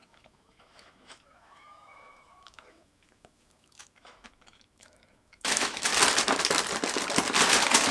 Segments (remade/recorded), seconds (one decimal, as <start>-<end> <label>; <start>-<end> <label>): 0.0-5.9 remade; 5.9-7.9 recorded